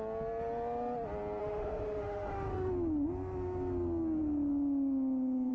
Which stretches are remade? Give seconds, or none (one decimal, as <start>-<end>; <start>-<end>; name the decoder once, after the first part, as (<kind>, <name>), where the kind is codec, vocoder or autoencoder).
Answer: 1.4-2.7 (autoencoder, DAC-VAE)